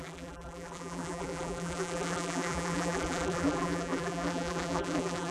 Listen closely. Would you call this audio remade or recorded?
remade